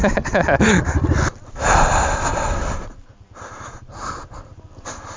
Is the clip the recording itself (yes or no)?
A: yes